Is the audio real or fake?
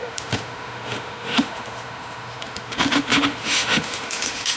fake